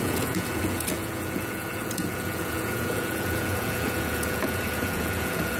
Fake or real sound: fake